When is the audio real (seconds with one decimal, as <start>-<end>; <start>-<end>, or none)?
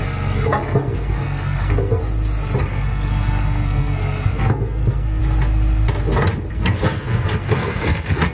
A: 2.0-2.6; 5.2-6.5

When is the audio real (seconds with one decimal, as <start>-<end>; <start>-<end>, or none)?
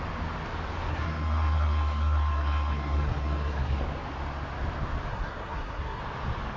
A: 0.0-0.9; 3.8-5.1; 6.0-6.6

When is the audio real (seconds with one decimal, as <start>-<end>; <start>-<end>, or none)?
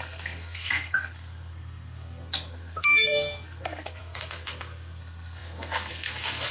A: none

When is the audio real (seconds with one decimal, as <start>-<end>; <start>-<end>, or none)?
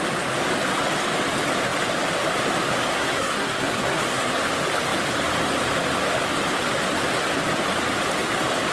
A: 0.0-2.9; 4.4-8.7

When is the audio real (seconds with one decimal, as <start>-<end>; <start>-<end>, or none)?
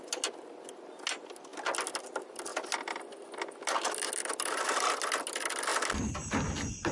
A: 0.0-6.9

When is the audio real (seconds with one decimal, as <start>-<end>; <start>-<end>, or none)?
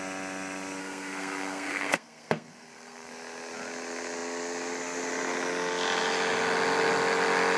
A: 0.0-0.8; 3.1-7.6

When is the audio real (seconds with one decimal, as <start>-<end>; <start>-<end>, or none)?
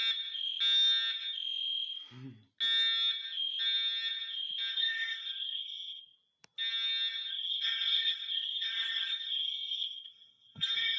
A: 0.0-4.7; 6.0-7.3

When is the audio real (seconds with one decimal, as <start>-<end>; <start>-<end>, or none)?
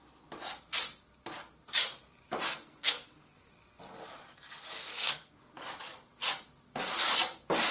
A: 0.0-2.6; 3.5-4.9; 5.5-7.7